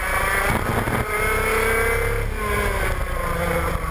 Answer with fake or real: real